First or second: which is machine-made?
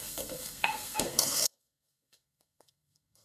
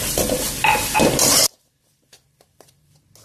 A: first